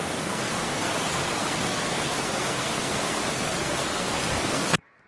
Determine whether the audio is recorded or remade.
remade